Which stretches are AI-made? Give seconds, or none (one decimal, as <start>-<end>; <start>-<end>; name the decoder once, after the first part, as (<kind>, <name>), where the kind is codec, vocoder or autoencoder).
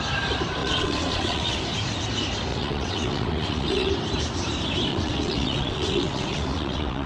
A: 0.6-1.6 (vocoder, WaveNeXt); 2.5-3.9; 4.9-7.1